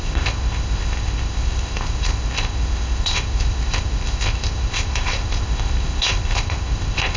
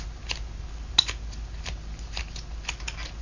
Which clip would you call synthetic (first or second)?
first